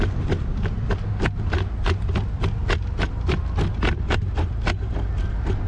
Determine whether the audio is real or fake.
real